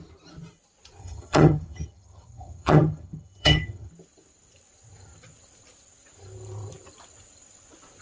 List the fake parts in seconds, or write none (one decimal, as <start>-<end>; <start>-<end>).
1.0-3.9

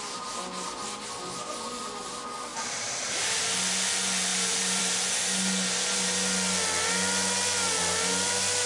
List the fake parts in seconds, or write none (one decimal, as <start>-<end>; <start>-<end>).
2.5-3.4; 4.3-4.8

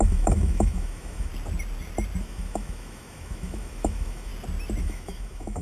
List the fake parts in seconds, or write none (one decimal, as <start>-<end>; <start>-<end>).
0.0-1.3; 2.2-4.3; 4.8-5.6

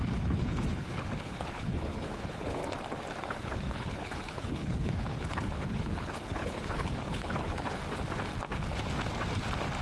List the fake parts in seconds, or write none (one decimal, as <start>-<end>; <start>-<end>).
0.0-2.6; 3.3-7.8

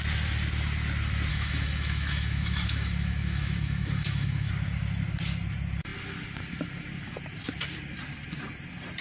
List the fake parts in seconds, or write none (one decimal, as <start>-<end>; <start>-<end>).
1.3-4.5

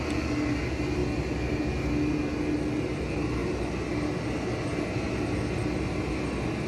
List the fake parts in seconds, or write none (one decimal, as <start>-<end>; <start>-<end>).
none

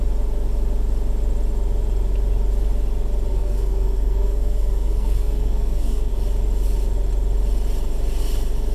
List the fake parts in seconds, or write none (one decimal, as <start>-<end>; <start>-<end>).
3.3-6.1

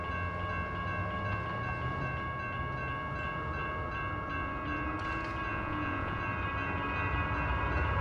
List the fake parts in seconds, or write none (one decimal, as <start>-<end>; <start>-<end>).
5.5-6.2